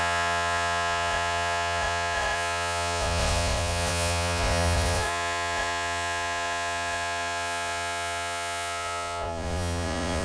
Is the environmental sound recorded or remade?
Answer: remade